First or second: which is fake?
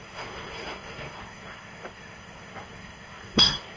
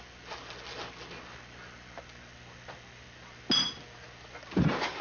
first